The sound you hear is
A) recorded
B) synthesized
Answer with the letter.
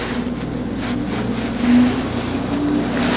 A